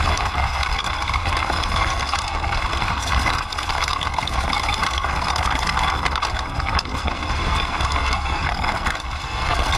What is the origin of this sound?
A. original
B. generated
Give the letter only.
B